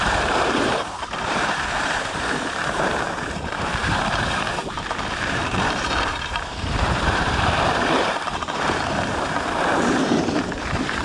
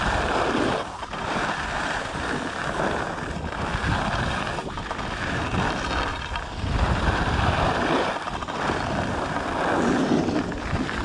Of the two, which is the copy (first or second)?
first